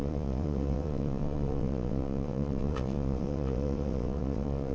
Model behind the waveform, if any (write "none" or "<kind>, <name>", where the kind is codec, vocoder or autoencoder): vocoder, WaveNeXt